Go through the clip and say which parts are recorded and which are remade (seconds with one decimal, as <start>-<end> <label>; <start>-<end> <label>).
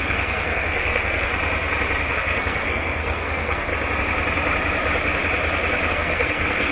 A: 0.0-1.3 remade; 1.3-2.1 recorded; 2.1-3.7 remade; 3.7-5.9 recorded; 5.9-6.7 remade